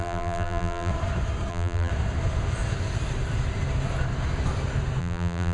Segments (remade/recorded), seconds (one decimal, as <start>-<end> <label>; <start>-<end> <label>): 0.0-0.9 remade; 0.9-1.5 recorded; 1.5-1.9 remade; 1.9-5.0 recorded; 5.0-5.5 remade